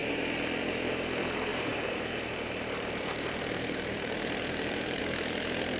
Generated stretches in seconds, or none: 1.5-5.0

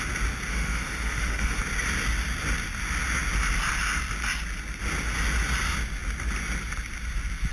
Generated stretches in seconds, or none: 0.5-1.6

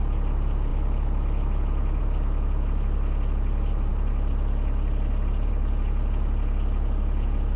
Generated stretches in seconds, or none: none

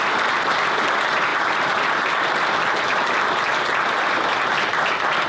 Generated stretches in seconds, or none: 1.3-4.5

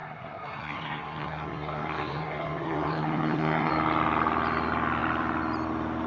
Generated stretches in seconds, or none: 0.0-3.7

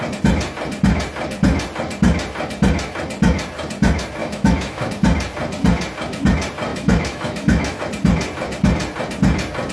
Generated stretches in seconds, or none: 4.2-4.9; 6.7-7.8

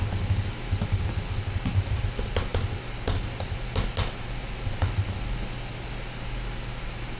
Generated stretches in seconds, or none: none

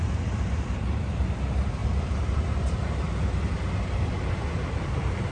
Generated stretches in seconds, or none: 0.0-5.3